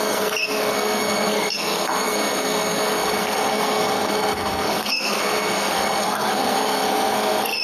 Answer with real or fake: fake